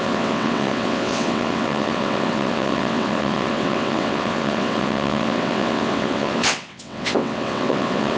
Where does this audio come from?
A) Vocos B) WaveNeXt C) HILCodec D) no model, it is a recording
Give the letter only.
B